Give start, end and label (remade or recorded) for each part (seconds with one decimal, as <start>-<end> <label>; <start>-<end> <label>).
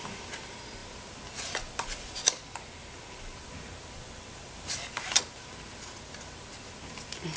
0.0-7.4 recorded